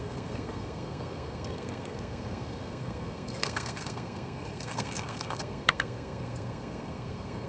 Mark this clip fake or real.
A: fake